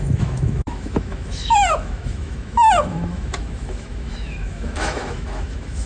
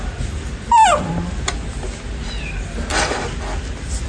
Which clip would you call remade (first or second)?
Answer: first